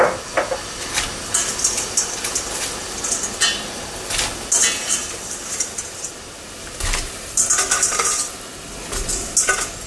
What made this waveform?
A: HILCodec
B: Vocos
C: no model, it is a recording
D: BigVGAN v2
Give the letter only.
C